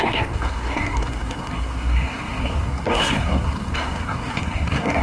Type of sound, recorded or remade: remade